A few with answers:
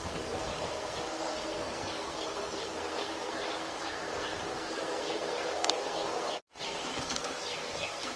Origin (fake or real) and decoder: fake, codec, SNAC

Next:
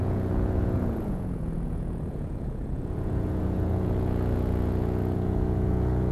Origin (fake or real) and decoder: fake, vocoder, Vocos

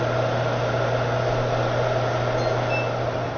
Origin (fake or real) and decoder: real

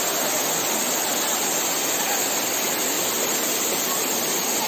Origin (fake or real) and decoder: real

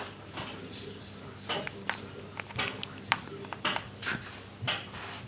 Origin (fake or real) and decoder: real